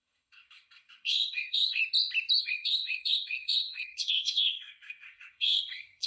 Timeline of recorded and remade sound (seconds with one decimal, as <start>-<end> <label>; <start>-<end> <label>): 0.0-1.8 remade; 1.8-2.4 recorded; 2.4-6.1 remade